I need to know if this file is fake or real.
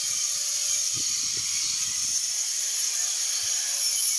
fake